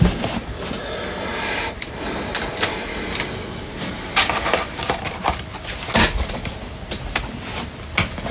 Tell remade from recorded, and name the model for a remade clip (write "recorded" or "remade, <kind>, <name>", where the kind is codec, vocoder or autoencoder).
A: recorded